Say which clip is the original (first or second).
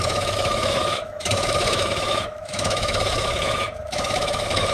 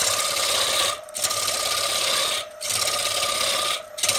second